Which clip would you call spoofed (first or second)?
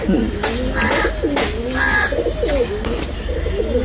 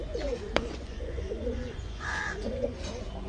second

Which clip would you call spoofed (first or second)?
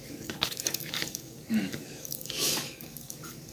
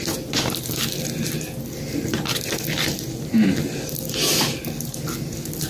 first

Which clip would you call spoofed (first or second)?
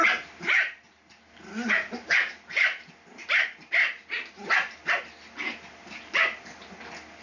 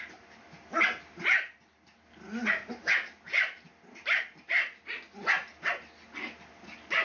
first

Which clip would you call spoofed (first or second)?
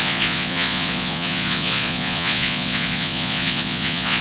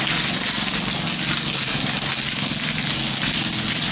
first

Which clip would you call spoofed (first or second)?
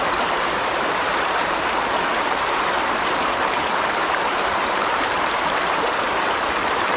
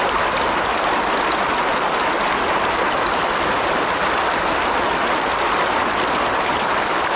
first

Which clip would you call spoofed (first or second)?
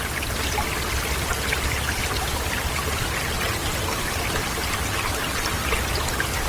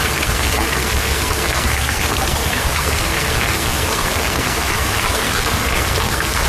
second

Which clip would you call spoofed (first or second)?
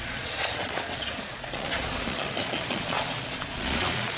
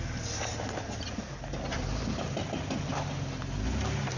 first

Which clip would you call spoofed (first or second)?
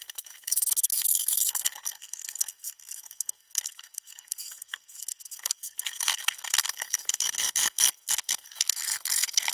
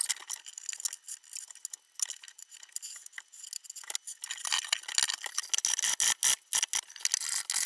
first